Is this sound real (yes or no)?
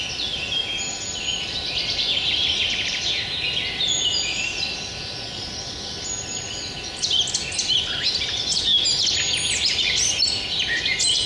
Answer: yes